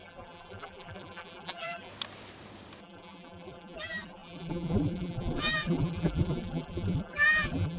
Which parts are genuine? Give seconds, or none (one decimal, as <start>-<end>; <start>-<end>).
1.9-2.8